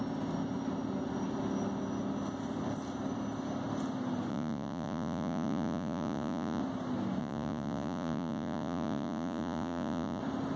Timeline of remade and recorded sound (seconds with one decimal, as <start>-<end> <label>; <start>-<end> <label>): 0.0-4.3 recorded; 4.3-6.6 remade; 6.6-7.2 recorded; 7.2-10.2 remade; 10.2-10.6 recorded